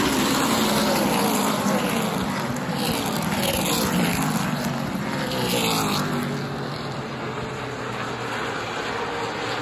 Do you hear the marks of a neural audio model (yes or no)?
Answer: no